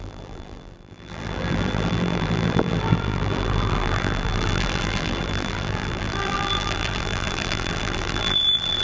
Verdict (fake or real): fake